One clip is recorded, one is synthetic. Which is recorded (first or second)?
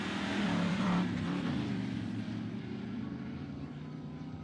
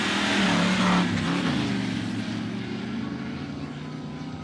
second